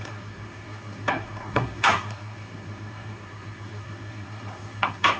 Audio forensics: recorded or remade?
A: remade